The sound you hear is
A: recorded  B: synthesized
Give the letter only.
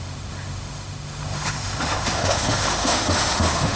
B